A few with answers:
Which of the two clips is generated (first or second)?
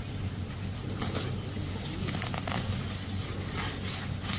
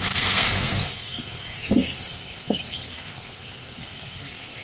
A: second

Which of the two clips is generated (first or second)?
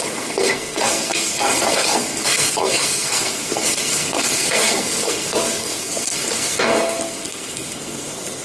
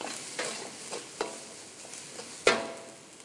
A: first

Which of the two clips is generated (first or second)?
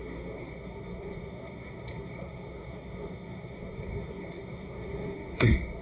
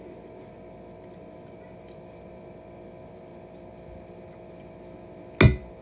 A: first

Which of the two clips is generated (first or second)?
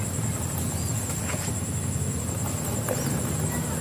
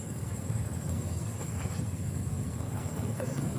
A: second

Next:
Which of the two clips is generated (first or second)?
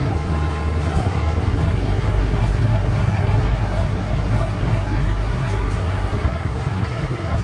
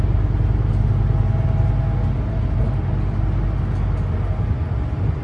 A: first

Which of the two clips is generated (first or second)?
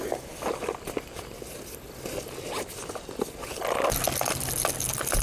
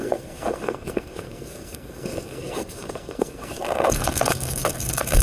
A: second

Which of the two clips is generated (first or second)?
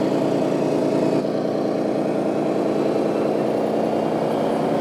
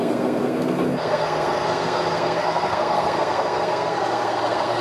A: second